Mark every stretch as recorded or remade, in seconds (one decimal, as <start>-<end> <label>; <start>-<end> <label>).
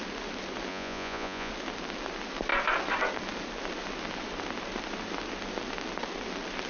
0.0-0.7 recorded; 0.7-1.5 remade; 1.5-6.7 recorded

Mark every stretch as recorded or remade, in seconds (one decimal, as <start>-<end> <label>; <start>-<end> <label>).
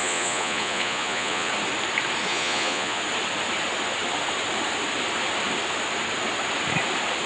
0.0-1.5 remade; 1.5-2.3 recorded; 2.3-3.0 remade; 3.0-7.3 recorded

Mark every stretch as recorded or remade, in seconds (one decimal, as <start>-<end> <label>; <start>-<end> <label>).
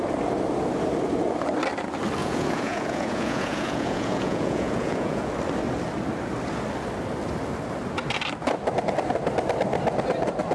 0.0-2.2 recorded; 2.2-5.3 remade; 5.3-10.5 recorded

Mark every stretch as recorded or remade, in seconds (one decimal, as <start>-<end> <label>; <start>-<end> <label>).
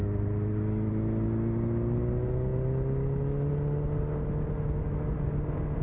0.0-5.8 recorded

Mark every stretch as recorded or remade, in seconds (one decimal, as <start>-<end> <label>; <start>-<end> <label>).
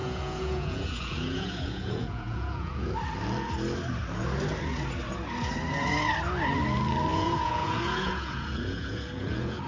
0.0-2.9 remade; 2.9-7.1 recorded; 7.1-9.7 remade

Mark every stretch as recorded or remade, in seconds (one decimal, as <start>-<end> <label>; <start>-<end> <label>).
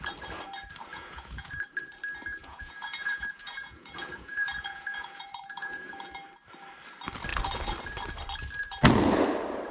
0.0-0.9 recorded; 0.9-1.5 remade; 1.5-2.4 recorded; 2.4-5.9 remade; 5.9-9.7 recorded